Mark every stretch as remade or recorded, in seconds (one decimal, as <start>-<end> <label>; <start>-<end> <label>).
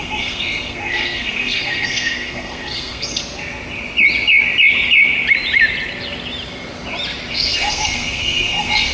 0.0-3.2 remade; 3.2-7.3 recorded; 7.3-8.9 remade